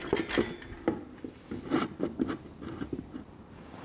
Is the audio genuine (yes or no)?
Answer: yes